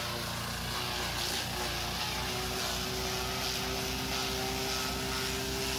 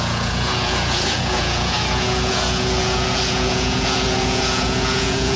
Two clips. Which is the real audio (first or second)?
first